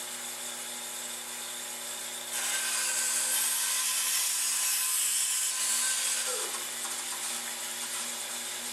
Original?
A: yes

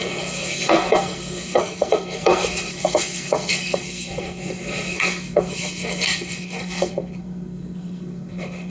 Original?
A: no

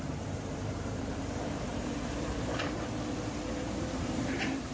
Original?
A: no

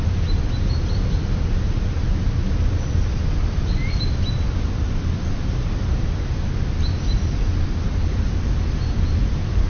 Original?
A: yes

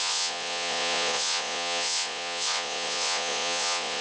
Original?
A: no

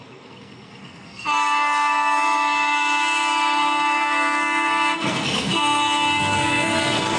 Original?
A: no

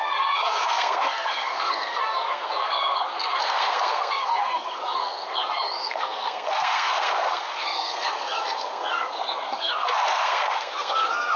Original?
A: no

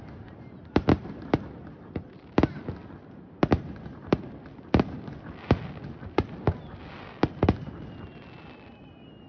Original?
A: yes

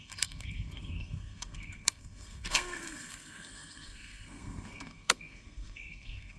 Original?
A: no